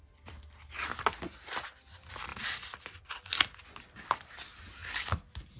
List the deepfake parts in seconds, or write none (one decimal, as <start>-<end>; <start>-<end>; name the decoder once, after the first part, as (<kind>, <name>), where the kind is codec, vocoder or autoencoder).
none